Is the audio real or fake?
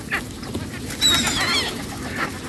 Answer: real